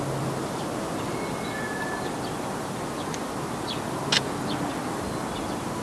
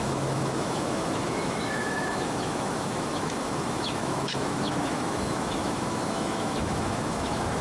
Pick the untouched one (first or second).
first